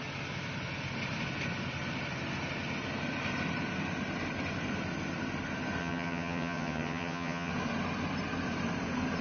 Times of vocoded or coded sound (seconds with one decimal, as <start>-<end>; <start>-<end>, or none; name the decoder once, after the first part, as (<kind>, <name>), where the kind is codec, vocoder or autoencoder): 5.8-7.5 (vocoder, HiFi-GAN)